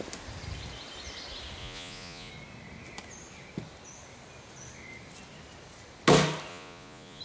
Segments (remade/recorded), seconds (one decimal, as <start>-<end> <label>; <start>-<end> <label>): 0.0-1.6 recorded; 1.6-2.3 remade; 2.3-6.5 recorded; 6.5-7.2 remade